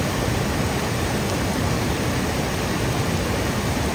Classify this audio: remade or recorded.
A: recorded